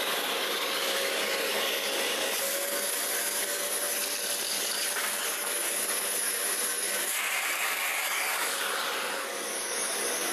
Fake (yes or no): yes